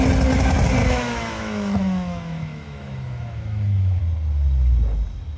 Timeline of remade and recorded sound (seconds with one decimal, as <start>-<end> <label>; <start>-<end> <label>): 0.0-0.8 recorded; 0.8-4.0 remade; 4.0-5.4 recorded